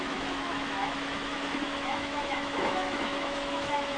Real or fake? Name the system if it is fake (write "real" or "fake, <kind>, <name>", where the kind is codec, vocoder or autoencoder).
fake, autoencoder, DAC-VAE